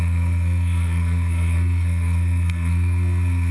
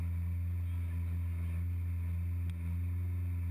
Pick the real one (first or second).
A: second